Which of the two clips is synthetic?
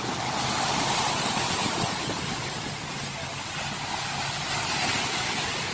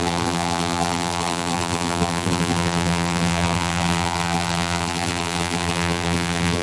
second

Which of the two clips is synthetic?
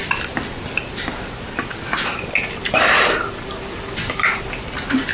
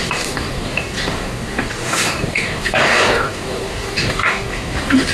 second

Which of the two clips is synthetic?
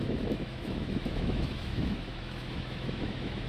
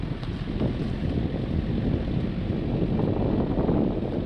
first